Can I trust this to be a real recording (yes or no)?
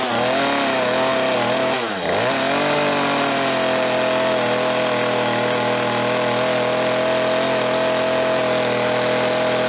yes